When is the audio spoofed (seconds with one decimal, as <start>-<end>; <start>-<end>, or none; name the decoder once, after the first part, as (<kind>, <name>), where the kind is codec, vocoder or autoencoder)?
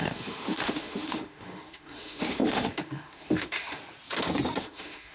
0.0-3.8 (autoencoder, DAC-VAE); 4.6-5.1